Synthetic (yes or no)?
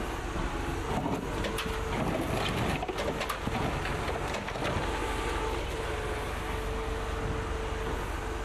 no